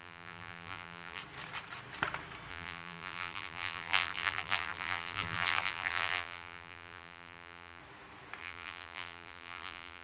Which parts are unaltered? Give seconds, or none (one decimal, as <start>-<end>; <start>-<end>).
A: 1.2-2.5; 7.8-8.4